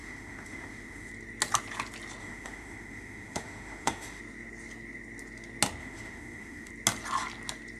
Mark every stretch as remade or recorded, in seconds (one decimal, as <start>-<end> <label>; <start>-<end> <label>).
0.0-1.1 remade; 1.1-2.2 recorded; 2.2-4.2 remade; 4.2-5.8 recorded; 5.8-6.7 remade; 6.7-7.8 recorded